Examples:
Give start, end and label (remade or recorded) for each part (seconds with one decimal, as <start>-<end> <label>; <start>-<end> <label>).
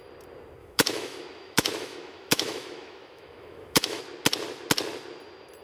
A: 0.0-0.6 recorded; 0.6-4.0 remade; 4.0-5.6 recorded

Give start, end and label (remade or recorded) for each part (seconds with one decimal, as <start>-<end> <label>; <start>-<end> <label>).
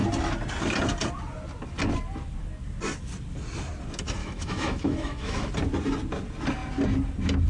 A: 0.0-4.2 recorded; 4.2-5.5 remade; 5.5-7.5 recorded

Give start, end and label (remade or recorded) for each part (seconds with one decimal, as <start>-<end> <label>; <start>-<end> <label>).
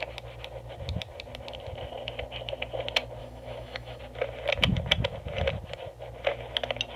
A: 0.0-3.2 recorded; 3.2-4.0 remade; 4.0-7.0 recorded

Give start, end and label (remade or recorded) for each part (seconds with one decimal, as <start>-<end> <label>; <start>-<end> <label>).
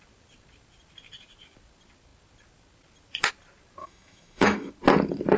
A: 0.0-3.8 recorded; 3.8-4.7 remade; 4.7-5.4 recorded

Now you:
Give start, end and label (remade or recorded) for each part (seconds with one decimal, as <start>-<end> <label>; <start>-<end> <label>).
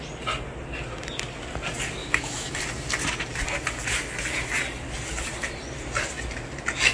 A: 0.0-2.0 recorded; 2.0-2.6 remade; 2.6-6.9 recorded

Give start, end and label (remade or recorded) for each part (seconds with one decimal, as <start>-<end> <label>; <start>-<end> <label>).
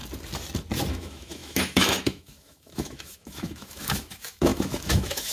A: 0.0-0.9 recorded; 0.9-5.3 remade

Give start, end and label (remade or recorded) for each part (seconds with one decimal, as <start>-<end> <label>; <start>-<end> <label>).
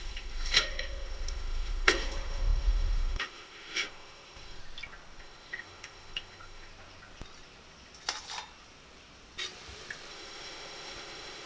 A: 0.0-4.6 remade; 4.6-5.2 recorded; 5.2-6.7 remade; 6.7-10.1 recorded; 10.1-11.5 remade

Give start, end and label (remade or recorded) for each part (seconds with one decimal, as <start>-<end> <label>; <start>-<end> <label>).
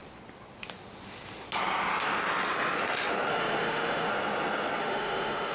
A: 0.0-3.3 recorded; 3.3-4.1 remade; 4.1-4.8 recorded; 4.8-5.5 remade